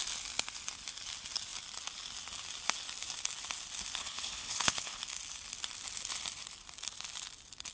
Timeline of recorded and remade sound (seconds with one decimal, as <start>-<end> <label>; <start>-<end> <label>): 0.0-4.0 recorded; 4.0-5.0 remade; 5.0-7.7 recorded